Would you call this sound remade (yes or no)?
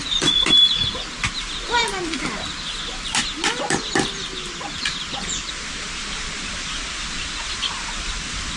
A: no